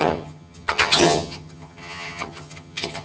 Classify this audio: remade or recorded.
remade